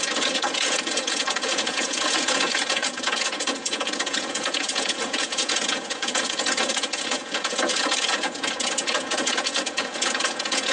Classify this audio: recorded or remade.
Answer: remade